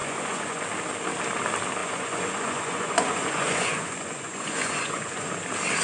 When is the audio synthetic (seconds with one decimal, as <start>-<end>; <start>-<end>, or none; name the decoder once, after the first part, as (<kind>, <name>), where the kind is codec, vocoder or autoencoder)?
0.0-0.6 (vocoder, Vocos); 1.8-5.3